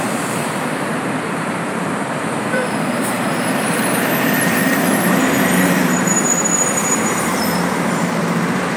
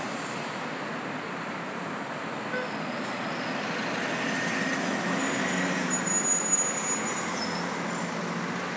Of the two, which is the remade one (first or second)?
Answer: first